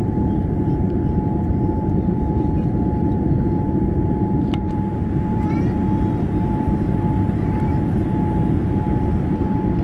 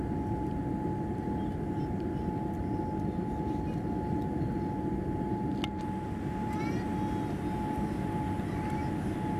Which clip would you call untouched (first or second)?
second